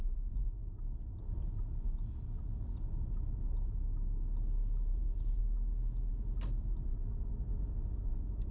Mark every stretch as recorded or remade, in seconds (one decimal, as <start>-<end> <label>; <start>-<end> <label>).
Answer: 0.0-4.9 recorded; 4.9-5.4 remade; 5.4-8.5 recorded

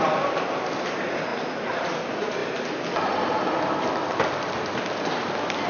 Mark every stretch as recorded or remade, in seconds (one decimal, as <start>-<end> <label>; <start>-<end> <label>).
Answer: 0.0-5.7 recorded

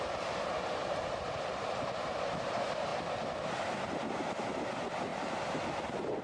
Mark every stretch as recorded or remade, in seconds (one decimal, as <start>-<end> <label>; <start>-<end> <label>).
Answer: 0.0-6.2 recorded

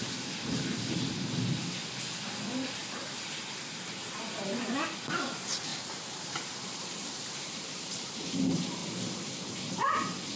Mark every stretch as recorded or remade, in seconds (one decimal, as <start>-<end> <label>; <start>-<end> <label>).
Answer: 0.0-5.7 recorded; 5.7-8.1 remade; 8.1-10.4 recorded

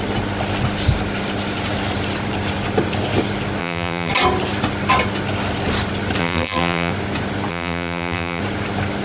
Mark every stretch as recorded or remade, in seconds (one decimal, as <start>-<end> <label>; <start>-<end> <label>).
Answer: 0.0-3.6 recorded; 3.6-4.1 remade; 4.1-6.2 recorded; 6.2-6.9 remade; 6.9-7.5 recorded; 7.5-8.4 remade; 8.4-9.0 recorded

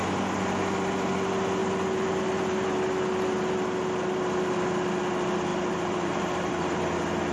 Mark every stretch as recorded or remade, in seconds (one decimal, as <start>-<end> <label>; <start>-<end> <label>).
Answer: 0.0-5.5 recorded; 5.5-6.8 remade; 6.8-7.3 recorded

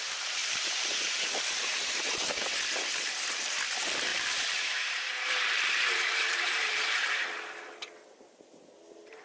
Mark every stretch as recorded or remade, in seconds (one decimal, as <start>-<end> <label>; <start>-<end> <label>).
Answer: 0.0-0.4 recorded; 0.4-2.3 remade; 2.3-4.1 recorded; 4.1-7.1 remade; 7.1-9.2 recorded

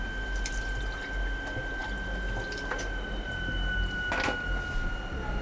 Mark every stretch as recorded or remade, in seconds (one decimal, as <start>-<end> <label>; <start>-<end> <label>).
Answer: 0.0-5.4 recorded